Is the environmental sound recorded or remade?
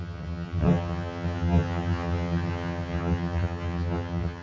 remade